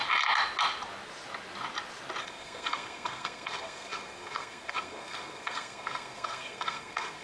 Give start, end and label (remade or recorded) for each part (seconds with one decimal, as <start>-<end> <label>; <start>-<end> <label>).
0.0-2.2 recorded; 2.2-7.2 remade